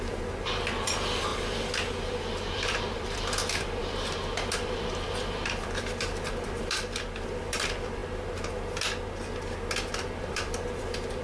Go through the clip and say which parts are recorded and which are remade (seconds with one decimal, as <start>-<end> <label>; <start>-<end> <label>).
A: 0.0-8.0 remade; 8.0-10.2 recorded; 10.2-11.2 remade